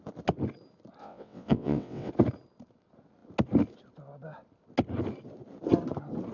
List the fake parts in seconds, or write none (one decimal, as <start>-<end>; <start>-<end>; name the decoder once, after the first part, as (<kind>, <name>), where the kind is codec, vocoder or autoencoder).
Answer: 1.0-2.1 (vocoder, WaveNeXt)